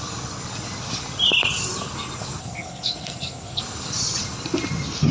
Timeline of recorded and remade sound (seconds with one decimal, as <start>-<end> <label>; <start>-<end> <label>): 0.0-2.4 recorded; 2.4-3.6 remade; 3.6-5.1 recorded